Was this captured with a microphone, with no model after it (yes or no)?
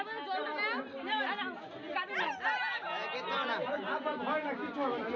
yes